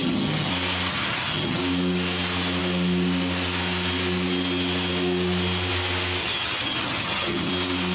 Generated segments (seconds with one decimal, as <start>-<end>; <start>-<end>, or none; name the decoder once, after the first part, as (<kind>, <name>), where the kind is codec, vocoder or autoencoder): 0.0-0.5 (vocoder, HiFi-GAN); 0.9-1.6; 6.2-7.5